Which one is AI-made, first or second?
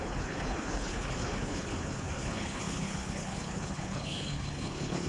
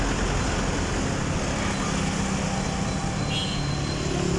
first